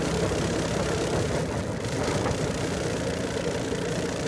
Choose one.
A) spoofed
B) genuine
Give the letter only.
B